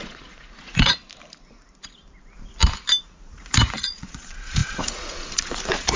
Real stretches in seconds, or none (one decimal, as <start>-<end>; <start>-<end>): 1.0-3.0